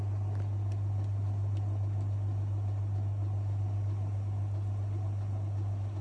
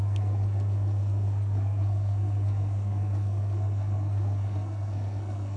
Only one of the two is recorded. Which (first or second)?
first